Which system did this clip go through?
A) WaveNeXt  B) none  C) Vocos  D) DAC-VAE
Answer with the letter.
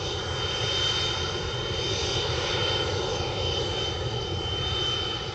B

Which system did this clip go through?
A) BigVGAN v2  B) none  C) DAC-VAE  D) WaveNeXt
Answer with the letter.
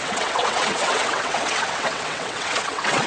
D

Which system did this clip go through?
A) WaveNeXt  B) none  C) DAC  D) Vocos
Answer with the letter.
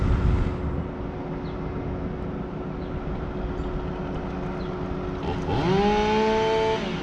B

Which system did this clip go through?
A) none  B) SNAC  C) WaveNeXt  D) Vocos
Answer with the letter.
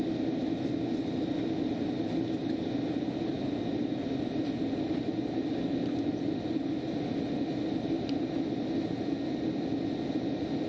A